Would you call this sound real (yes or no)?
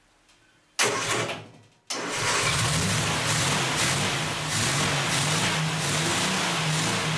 yes